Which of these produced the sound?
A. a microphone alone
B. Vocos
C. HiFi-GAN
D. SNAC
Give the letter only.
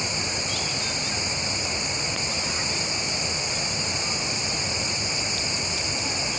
A